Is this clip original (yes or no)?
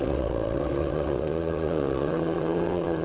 no